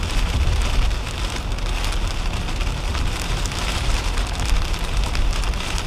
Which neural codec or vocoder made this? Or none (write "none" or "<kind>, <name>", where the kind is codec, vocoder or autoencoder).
none